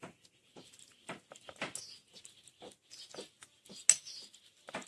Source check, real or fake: real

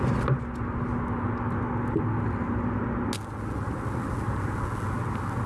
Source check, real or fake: real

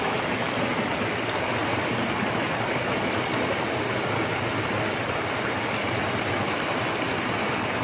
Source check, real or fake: real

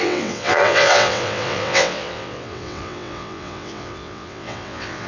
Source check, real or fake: fake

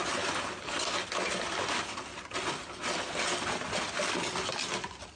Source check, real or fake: real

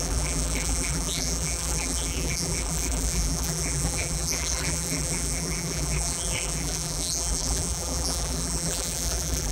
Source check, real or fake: fake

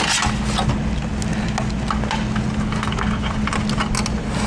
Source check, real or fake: real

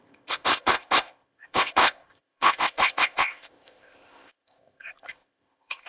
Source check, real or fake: fake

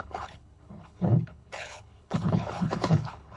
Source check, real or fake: fake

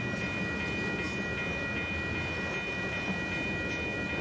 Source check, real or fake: real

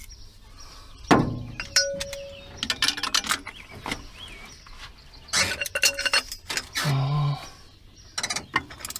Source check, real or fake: real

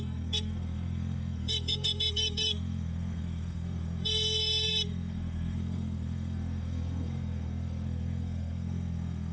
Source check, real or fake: fake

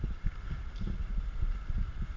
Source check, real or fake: real